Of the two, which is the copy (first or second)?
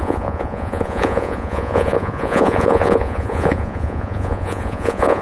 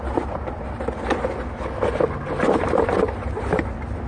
first